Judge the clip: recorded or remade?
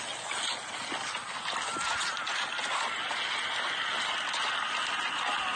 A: recorded